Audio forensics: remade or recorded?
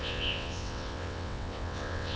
remade